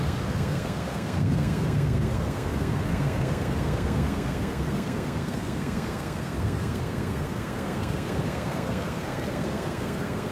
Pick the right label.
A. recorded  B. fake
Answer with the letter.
B